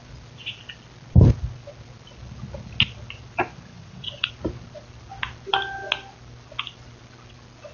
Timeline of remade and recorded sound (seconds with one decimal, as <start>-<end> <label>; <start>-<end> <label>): 0.0-3.7 recorded; 3.7-4.3 remade; 4.3-7.7 recorded